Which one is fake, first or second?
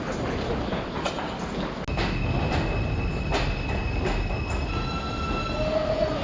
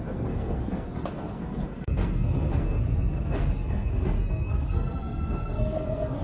second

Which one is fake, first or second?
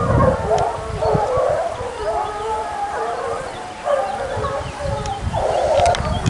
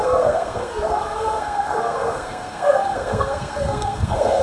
second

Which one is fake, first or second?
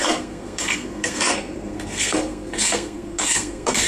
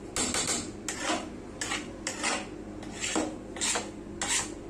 first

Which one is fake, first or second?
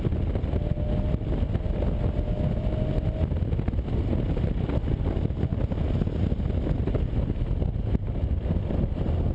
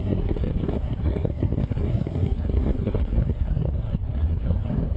second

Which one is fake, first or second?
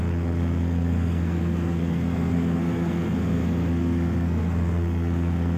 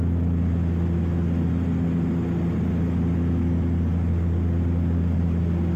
first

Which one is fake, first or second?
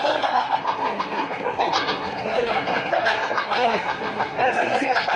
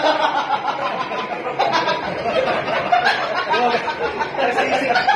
first